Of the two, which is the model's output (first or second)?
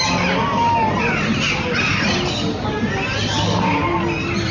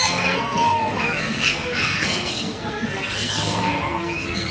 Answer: second